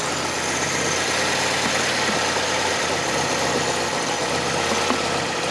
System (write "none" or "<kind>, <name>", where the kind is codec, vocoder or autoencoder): none